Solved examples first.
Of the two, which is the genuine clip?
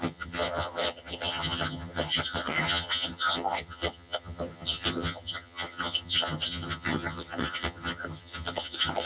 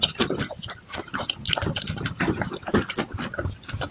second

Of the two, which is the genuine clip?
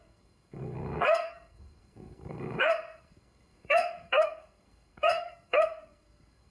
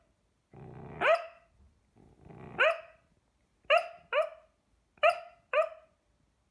second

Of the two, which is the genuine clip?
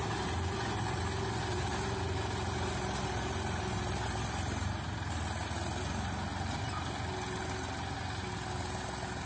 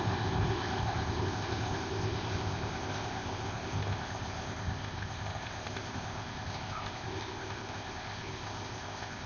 first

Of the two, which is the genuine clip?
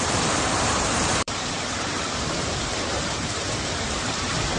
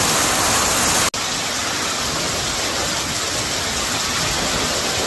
second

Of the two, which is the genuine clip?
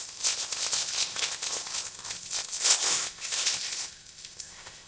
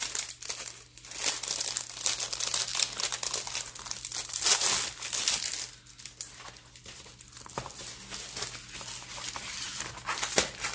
second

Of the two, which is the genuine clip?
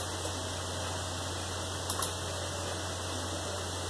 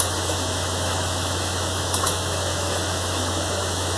first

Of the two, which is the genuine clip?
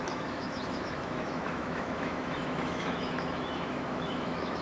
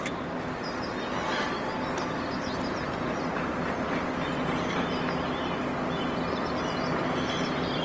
second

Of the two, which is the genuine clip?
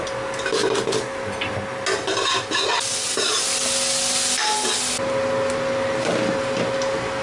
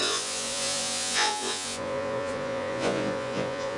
first